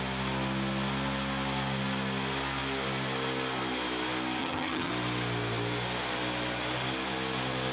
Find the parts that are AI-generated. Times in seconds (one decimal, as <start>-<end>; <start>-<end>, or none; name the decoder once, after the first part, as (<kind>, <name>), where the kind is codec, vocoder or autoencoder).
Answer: 4.4-4.9 (vocoder, HiFi-GAN)